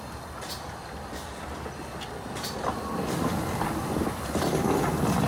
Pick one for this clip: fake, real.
real